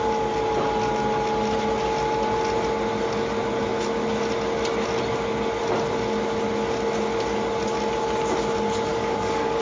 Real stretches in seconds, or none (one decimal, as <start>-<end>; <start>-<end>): 0.0-8.9